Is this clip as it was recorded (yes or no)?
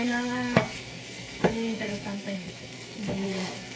no